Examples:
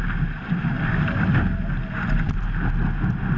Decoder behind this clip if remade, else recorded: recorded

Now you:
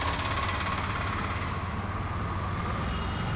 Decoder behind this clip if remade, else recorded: recorded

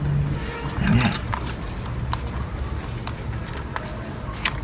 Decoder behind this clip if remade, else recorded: recorded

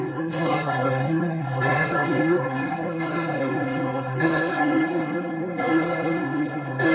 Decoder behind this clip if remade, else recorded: remade, codec, SNAC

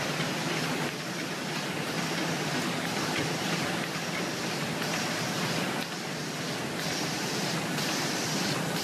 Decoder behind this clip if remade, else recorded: remade, vocoder, BigVGAN v2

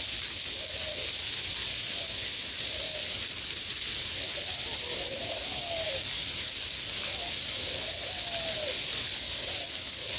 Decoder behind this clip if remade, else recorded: recorded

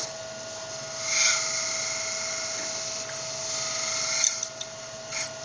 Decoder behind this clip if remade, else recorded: recorded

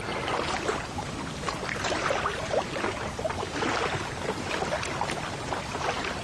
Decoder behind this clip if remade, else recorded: recorded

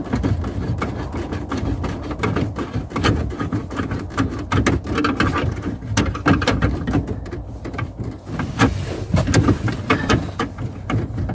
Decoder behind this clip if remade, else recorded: recorded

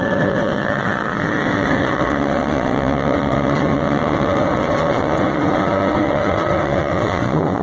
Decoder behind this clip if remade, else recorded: remade, vocoder, WaveNeXt